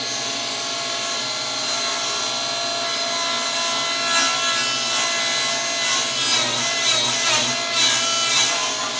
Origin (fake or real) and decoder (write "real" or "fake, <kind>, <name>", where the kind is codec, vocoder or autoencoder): real